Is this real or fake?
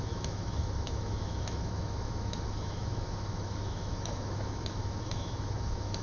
fake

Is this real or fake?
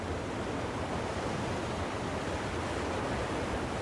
real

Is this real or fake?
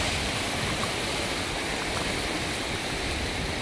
real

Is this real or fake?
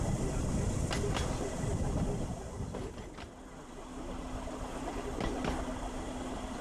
real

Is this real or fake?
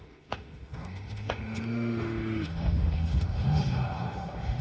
fake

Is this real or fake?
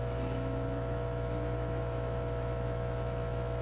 fake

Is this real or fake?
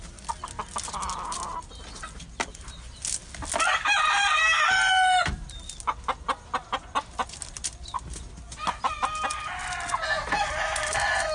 real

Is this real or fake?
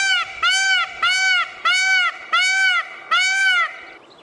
real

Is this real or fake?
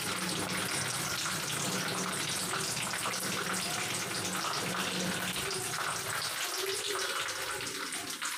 real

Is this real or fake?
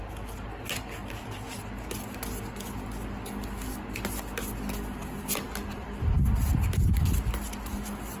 real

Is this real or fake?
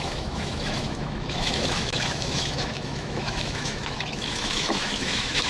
fake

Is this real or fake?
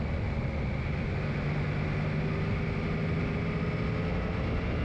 real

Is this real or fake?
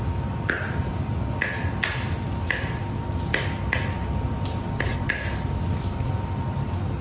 real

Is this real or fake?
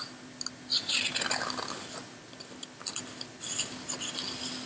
real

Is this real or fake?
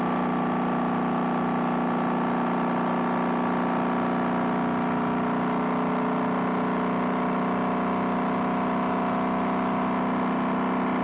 real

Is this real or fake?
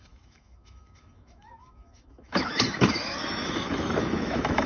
fake